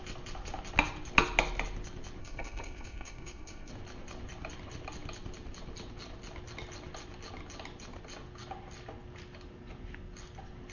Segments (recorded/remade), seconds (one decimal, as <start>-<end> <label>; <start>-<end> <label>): 0.0-2.2 recorded; 2.2-3.7 remade; 3.7-10.7 recorded

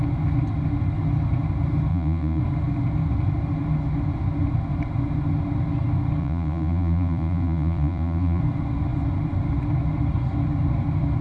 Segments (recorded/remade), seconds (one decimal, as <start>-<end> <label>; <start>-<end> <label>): 0.0-1.9 recorded; 1.9-2.4 remade; 2.4-6.2 recorded; 6.2-8.4 remade; 8.4-11.2 recorded